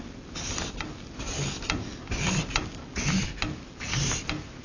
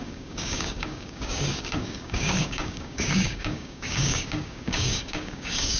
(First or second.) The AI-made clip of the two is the second